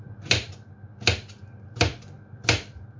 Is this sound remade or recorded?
recorded